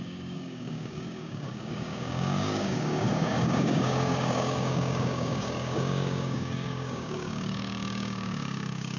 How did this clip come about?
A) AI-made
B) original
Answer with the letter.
A